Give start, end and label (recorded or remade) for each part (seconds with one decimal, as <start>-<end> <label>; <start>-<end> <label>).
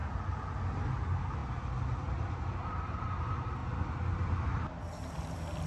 0.0-5.7 recorded